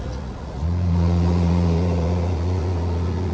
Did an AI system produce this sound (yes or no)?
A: yes